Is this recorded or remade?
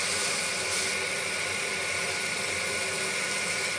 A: recorded